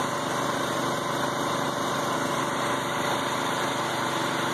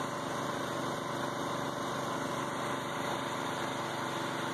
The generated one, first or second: first